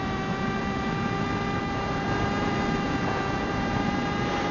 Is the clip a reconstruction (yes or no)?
yes